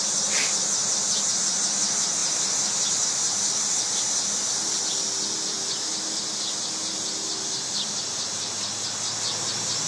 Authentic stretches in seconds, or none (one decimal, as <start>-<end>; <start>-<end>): 0.0-9.9